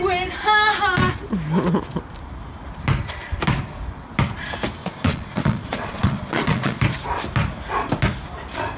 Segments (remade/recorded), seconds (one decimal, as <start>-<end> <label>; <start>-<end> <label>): 0.0-4.8 recorded; 4.8-6.8 remade; 6.8-8.8 recorded